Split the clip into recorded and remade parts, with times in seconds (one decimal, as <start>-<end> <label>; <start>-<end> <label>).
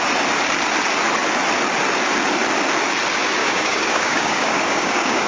0.0-3.4 recorded; 3.4-5.3 remade